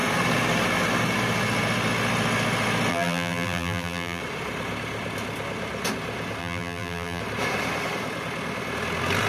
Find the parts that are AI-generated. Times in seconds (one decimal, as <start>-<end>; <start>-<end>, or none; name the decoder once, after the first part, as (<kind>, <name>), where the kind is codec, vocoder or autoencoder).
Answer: 2.9-4.2 (vocoder, BigVGAN v2); 6.4-7.2

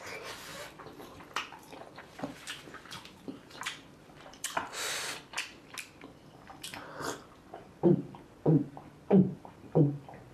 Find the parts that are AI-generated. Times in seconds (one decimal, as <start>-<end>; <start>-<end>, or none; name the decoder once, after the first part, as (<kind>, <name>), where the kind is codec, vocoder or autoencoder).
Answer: 0.5-5.1 (vocoder, BigVGAN v2)

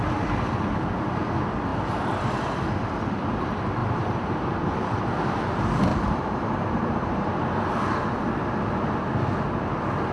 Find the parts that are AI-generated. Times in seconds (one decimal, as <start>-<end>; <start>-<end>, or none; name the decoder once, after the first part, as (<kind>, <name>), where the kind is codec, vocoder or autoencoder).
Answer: 3.8-5.0 (vocoder, BigVGAN v2); 5.9-7.3

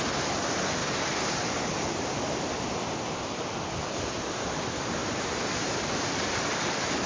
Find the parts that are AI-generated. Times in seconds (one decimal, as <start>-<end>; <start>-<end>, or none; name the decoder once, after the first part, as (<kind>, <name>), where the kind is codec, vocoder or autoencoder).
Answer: 0.8-2.1 (vocoder, BigVGAN v2); 3.8-4.3; 5.0-7.1

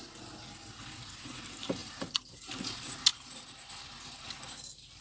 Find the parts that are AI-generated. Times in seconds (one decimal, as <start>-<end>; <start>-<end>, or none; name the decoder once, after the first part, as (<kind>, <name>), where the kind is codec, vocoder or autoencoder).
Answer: 1.8-2.5 (vocoder, BigVGAN v2); 3.1-3.7

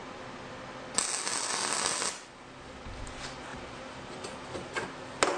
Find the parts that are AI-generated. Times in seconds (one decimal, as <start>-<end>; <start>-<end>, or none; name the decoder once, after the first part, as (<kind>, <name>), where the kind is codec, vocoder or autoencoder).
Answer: 3.5-4.9 (vocoder, BigVGAN v2)

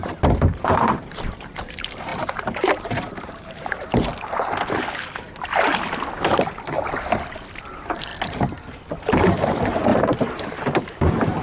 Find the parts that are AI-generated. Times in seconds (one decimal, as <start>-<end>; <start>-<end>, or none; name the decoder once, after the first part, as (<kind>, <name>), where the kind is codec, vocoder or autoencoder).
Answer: 0.0-4.1 (vocoder, BigVGAN v2); 7.6-8.1; 9.3-11.4